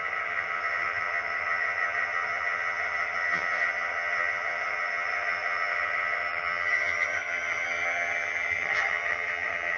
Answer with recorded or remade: remade